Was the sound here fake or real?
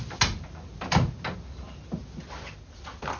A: real